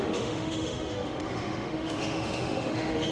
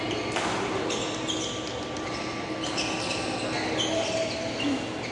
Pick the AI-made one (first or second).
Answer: first